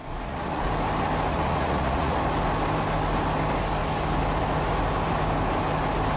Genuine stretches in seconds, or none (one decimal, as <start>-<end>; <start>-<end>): 0.7-1.3; 2.2-6.2

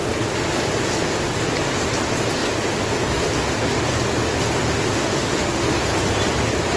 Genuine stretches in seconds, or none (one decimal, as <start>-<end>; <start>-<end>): 0.0-5.0; 5.6-6.8

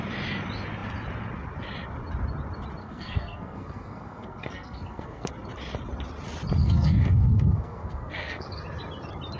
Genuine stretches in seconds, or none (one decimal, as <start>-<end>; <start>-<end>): 0.0-2.8; 5.3-6.6; 8.5-9.4

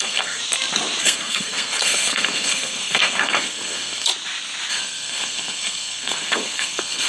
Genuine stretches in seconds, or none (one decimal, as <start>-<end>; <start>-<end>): 0.4-1.0; 4.1-4.7

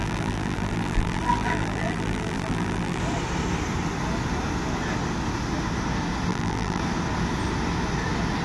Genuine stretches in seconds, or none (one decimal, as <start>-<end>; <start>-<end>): 3.0-6.3; 6.8-8.4

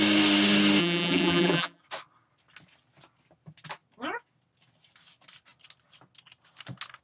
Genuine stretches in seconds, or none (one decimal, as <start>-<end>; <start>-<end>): 0.0-0.8; 1.8-7.0